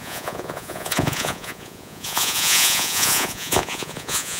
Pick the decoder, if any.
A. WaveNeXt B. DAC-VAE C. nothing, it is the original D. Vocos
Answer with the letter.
D